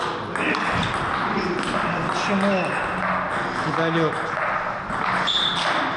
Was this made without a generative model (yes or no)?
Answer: yes